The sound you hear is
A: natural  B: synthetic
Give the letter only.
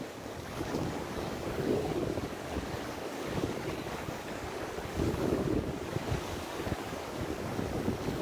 B